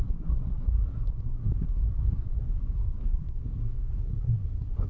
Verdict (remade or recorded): remade